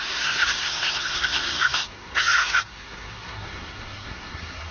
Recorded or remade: remade